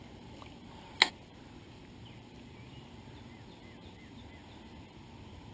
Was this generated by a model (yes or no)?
no